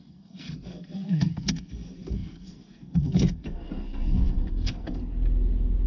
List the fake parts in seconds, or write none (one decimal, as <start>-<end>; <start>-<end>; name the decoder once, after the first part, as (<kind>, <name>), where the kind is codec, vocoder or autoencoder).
0.0-5.0 (codec, SNAC)